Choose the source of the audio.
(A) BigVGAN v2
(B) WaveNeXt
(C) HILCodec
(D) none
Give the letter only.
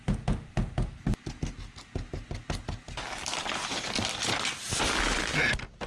D